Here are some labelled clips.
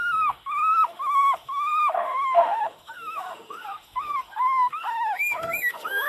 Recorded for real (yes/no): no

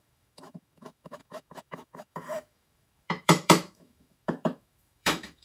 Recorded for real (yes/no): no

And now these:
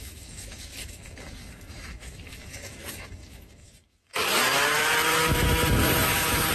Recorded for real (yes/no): no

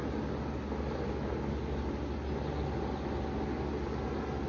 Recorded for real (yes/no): yes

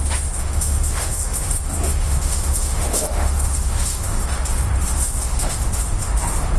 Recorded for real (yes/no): no